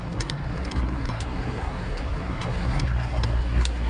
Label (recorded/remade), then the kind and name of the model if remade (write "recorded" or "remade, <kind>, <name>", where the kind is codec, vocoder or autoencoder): remade, codec, SNAC